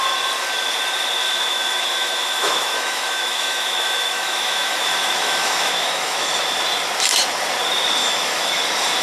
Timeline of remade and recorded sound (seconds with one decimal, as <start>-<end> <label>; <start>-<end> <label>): 0.0-1.2 recorded; 1.2-6.3 remade; 6.3-8.0 recorded; 8.0-8.6 remade; 8.6-9.0 recorded